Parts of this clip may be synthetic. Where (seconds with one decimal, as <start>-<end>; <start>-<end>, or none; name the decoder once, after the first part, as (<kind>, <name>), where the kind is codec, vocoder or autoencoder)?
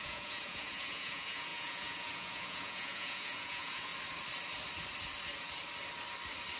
0.0-3.9 (vocoder, Vocos)